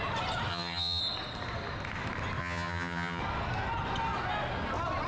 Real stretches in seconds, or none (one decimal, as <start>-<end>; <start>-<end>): 0.0-0.5; 1.0-2.4; 3.2-5.1